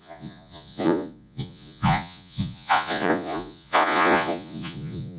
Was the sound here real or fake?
fake